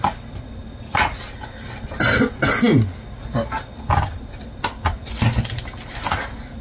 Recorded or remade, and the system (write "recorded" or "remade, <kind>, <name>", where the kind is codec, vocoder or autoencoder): recorded